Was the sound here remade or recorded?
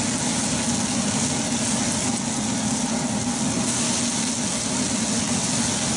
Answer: recorded